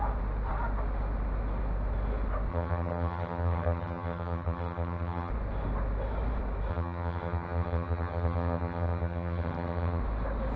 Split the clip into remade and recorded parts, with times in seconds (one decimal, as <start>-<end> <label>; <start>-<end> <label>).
0.0-2.5 recorded; 2.5-5.3 remade; 5.3-6.7 recorded; 6.7-10.0 remade; 10.0-10.6 recorded